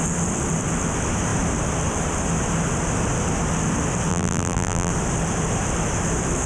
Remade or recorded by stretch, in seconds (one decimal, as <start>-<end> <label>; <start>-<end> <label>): 0.0-4.1 recorded; 4.1-4.9 remade; 4.9-6.5 recorded